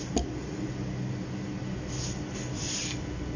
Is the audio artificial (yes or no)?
no